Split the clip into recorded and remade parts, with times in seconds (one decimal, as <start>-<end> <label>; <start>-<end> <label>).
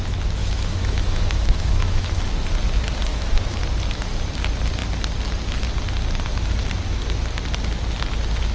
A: 0.0-0.4 recorded; 0.4-2.2 remade; 2.2-3.1 recorded; 3.1-3.6 remade; 3.6-8.5 recorded